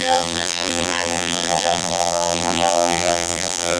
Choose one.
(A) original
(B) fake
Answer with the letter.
B